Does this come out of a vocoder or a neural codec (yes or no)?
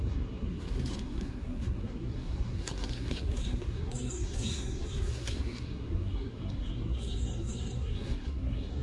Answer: yes